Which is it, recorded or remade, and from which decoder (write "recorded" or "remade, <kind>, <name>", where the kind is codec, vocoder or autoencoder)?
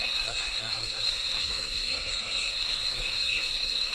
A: remade, codec, SNAC